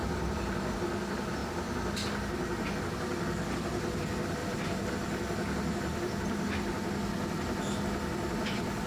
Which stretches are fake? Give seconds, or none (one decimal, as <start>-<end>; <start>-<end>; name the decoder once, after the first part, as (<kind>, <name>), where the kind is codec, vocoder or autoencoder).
0.0-0.8 (vocoder, BigVGAN v2); 4.4-4.9

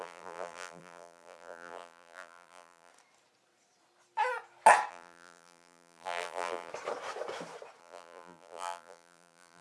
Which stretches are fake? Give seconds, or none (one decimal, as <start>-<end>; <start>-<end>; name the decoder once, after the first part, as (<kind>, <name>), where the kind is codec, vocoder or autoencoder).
0.0-2.9 (vocoder, BigVGAN v2); 4.9-6.7; 7.8-9.6

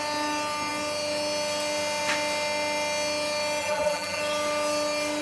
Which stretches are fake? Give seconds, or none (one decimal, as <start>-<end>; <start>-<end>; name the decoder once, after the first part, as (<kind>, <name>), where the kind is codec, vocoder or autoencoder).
3.6-4.2 (vocoder, BigVGAN v2)

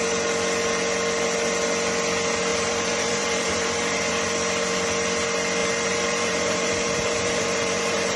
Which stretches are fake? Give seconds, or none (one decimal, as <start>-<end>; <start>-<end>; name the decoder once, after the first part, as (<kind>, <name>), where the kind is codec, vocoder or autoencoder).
2.5-4.1 (vocoder, BigVGAN v2); 5.6-8.2

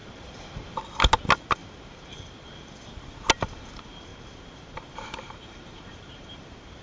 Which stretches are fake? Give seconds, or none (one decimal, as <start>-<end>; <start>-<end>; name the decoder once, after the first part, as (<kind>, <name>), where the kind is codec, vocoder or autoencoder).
0.0-0.8 (vocoder, BigVGAN v2); 1.6-2.9; 4.1-6.8